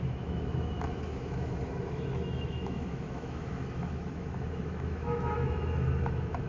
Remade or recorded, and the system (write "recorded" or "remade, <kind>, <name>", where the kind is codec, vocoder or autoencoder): remade, autoencoder, DAC-VAE